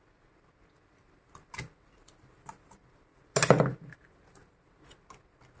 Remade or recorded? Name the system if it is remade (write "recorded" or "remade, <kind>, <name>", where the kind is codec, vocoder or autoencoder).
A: recorded